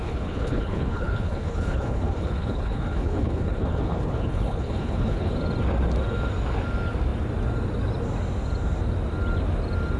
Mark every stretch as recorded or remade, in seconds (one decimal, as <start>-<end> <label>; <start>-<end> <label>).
0.0-5.3 remade; 5.3-10.0 recorded